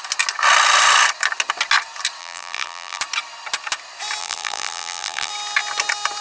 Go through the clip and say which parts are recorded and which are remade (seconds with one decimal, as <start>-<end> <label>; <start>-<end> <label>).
0.0-2.2 recorded; 2.2-3.0 remade; 3.0-4.2 recorded; 4.2-5.3 remade; 5.3-6.2 recorded